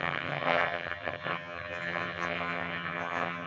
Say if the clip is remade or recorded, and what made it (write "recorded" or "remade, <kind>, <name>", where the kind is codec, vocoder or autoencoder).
remade, vocoder, HiFi-GAN